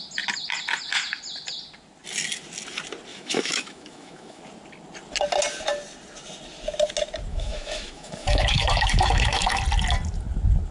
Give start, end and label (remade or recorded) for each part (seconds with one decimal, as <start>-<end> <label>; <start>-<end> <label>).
0.0-3.1 recorded; 3.1-4.4 remade; 4.4-7.3 recorded; 7.3-9.6 remade; 9.6-10.7 recorded